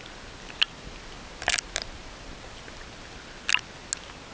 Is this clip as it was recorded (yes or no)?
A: yes